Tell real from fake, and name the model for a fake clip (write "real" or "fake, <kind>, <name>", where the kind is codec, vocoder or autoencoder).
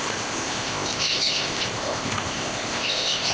fake, codec, ZipCodec